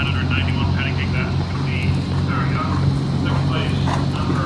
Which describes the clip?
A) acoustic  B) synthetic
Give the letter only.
A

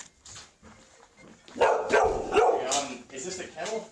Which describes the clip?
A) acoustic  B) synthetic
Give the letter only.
A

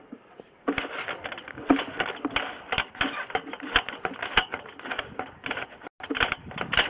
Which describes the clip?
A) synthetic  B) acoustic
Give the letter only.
B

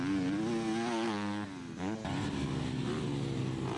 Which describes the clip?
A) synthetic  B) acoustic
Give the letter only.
B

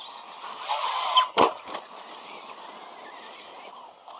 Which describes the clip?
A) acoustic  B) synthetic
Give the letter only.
A